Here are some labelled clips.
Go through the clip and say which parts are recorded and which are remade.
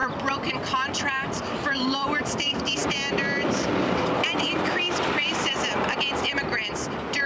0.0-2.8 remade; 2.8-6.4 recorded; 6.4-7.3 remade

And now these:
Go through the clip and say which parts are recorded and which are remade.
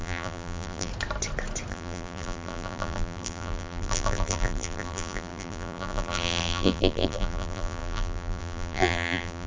0.0-0.9 remade; 0.9-1.7 recorded; 1.7-9.5 remade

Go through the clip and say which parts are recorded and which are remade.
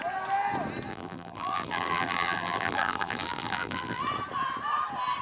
0.0-0.9 recorded; 0.9-4.0 remade; 4.0-5.2 recorded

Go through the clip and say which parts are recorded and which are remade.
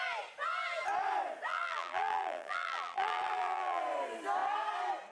0.0-1.5 recorded; 1.5-3.8 remade; 3.8-5.1 recorded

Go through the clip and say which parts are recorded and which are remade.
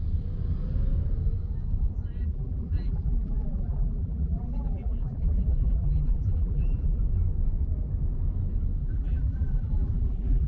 0.0-2.2 recorded; 2.2-7.0 remade; 7.0-8.8 recorded; 8.8-10.5 remade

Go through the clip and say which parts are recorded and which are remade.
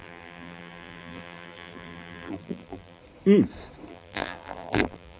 0.0-3.0 remade; 3.0-3.9 recorded; 3.9-5.2 remade